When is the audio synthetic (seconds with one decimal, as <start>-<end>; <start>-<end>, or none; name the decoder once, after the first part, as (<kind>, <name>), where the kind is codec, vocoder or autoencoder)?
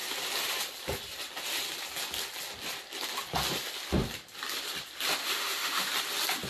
5.2-5.9 (autoencoder, DAC-VAE)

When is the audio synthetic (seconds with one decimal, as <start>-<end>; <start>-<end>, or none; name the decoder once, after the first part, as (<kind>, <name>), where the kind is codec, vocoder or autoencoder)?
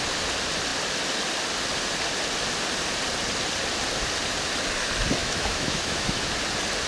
5.2-6.3 (autoencoder, DAC-VAE)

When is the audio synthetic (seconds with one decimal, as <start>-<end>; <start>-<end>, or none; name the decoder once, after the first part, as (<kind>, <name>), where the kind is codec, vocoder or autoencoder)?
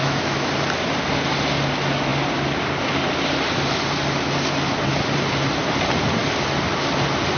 0.0-0.5 (autoencoder, DAC-VAE)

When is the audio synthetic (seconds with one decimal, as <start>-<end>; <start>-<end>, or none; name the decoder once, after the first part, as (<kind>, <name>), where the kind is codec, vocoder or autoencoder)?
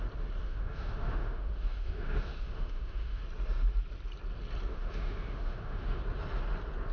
0.4-3.2 (autoencoder, DAC-VAE); 4.7-6.0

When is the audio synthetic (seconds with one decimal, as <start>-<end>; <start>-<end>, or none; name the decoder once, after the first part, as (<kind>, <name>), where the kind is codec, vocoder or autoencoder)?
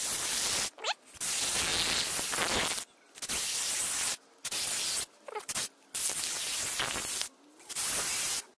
none